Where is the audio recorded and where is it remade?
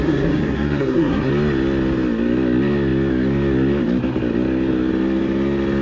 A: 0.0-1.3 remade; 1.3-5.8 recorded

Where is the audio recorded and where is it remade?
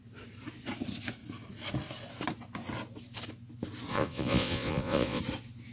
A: 0.0-3.9 recorded; 3.9-5.2 remade; 5.2-5.7 recorded